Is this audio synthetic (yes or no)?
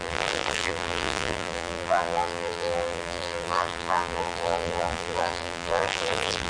yes